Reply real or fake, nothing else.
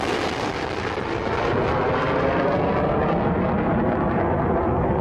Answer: real